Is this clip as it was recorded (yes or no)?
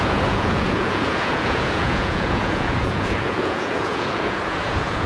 no